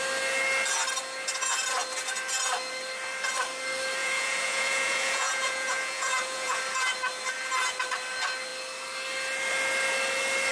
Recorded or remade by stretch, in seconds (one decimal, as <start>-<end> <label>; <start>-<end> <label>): 0.0-4.0 recorded; 4.0-6.6 remade; 6.6-10.5 recorded